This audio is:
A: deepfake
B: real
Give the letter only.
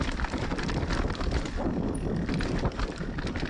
B